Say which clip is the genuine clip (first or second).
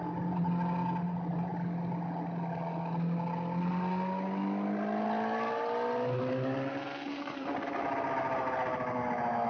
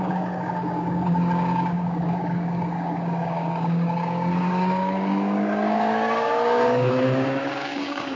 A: first